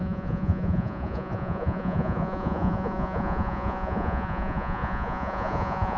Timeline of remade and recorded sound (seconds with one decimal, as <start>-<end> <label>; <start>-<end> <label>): 0.0-6.0 remade